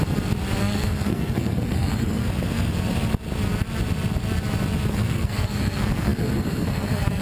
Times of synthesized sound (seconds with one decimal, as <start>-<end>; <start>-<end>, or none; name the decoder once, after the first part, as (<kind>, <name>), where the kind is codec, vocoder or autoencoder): 0.6-2.2 (codec, SNAC); 4.9-7.2